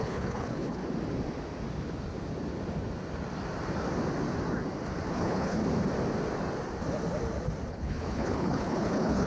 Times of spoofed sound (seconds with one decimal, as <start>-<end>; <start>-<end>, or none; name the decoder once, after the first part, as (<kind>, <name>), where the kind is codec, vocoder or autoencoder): 0.0-0.8 (codec, HILCodec); 5.1-5.6; 7.7-9.3